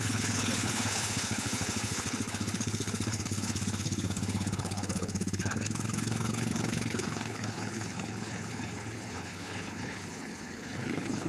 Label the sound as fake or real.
fake